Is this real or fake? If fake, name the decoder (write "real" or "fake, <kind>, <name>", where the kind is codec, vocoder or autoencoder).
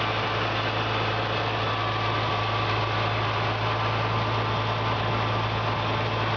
real